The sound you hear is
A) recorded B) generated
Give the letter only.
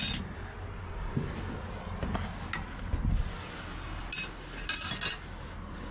A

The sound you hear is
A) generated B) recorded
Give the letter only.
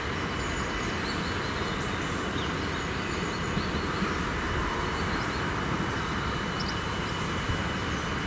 B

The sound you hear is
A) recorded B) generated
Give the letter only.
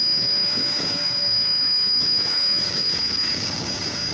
B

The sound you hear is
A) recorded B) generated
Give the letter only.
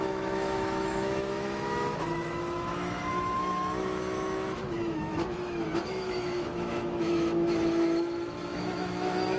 B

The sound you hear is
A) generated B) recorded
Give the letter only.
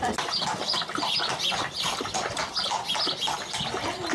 B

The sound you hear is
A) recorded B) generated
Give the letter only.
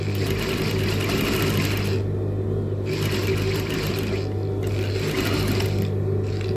A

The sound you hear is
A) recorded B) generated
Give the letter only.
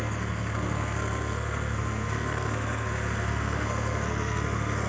B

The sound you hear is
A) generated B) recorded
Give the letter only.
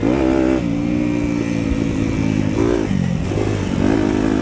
B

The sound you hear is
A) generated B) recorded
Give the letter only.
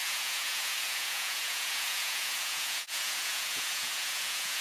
A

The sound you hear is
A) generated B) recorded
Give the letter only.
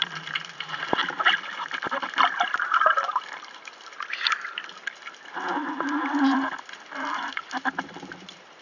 A